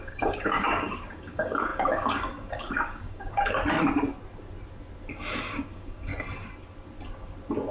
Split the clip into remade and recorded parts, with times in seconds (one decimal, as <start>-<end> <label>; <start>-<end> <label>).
0.0-3.6 remade; 3.6-5.1 recorded; 5.1-6.1 remade; 6.1-7.7 recorded